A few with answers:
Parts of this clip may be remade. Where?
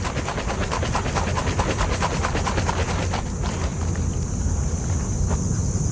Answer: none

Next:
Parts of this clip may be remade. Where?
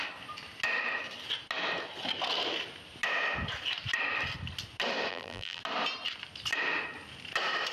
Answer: 5.1-5.6 (vocoder, BigVGAN v2)